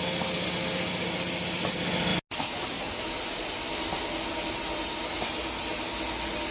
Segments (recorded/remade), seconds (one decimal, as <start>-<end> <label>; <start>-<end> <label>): 0.0-6.5 recorded